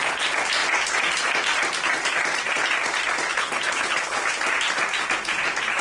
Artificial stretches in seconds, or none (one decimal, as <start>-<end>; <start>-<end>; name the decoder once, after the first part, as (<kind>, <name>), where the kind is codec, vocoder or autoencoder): 3.3-4.3 (codec, HILCodec)